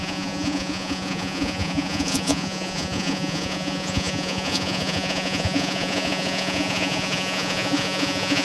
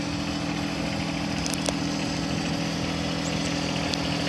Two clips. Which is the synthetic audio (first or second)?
first